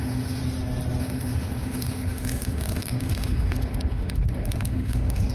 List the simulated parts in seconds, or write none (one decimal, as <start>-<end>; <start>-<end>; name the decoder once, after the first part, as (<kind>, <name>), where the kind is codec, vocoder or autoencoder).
0.0-0.4 (autoencoder, DAC-VAE); 1.0-5.3